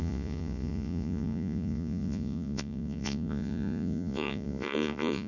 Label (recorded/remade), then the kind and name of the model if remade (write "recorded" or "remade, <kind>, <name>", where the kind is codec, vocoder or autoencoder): remade, vocoder, Vocos